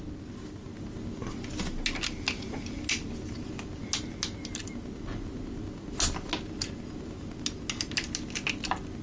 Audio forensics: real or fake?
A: real